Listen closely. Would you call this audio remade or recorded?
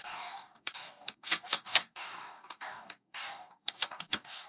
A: remade